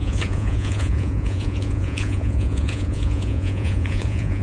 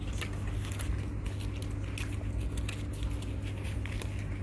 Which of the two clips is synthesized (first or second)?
first